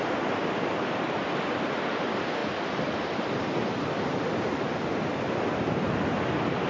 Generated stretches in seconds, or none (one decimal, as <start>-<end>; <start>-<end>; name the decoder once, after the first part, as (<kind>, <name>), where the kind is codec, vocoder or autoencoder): none